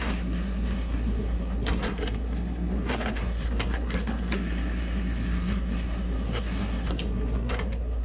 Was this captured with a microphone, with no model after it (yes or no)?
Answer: no